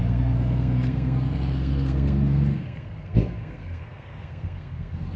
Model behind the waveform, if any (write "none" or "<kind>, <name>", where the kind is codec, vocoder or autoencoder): codec, SNAC